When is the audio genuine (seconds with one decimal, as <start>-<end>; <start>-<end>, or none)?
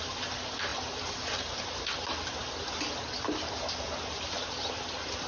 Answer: 0.0-0.7; 1.9-5.3